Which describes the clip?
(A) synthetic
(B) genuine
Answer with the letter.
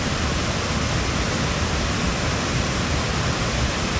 B